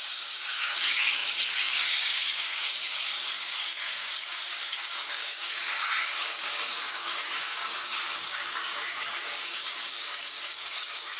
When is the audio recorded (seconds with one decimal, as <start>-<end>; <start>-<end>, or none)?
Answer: none